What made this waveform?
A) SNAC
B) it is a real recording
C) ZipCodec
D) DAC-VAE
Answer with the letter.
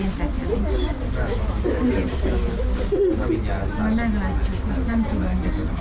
B